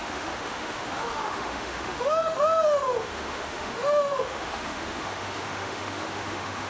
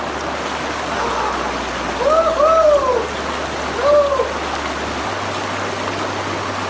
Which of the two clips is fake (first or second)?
first